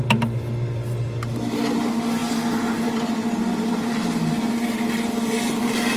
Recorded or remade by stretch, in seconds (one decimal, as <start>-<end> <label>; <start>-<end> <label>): 0.0-6.0 recorded